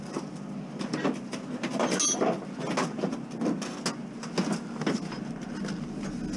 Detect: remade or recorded recorded